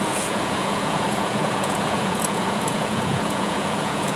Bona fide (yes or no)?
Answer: no